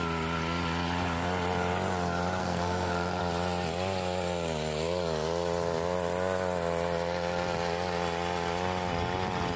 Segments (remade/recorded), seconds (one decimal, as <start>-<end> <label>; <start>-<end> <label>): 0.0-2.4 recorded; 2.4-3.2 remade; 3.2-9.6 recorded